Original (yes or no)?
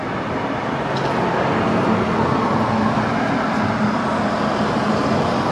yes